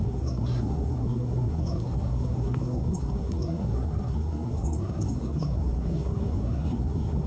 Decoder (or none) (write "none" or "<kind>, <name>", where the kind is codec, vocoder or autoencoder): codec, SNAC